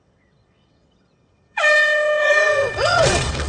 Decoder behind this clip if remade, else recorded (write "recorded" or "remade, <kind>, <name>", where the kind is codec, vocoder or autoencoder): remade, vocoder, WaveNeXt